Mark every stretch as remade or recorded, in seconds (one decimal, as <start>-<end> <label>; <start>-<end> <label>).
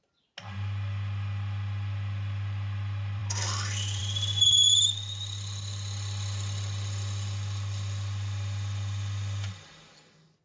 0.0-10.4 recorded